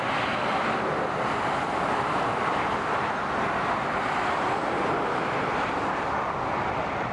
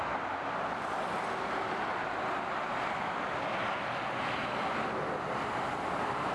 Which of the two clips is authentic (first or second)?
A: second